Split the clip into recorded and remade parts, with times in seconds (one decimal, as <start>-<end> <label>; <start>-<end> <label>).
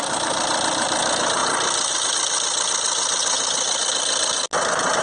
0.0-5.0 recorded